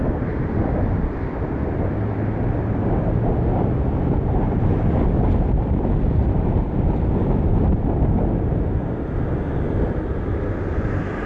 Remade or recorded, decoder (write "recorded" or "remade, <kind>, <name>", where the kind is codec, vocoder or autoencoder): recorded